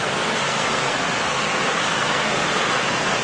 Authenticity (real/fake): fake